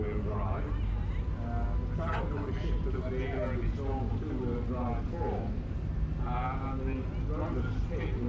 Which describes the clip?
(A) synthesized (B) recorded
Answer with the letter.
B